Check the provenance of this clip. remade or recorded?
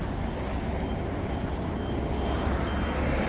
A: recorded